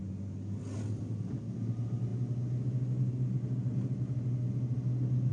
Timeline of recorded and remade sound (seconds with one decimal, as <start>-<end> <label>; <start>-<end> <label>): 0.0-5.3 recorded